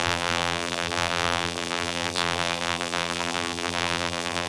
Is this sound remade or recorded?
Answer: remade